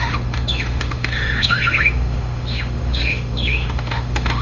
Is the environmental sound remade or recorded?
remade